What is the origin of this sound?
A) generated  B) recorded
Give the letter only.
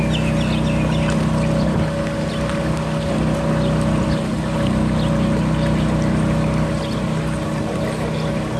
B